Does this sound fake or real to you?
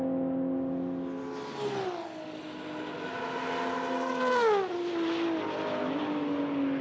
real